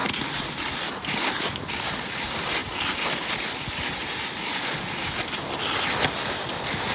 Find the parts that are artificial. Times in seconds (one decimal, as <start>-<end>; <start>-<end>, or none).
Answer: none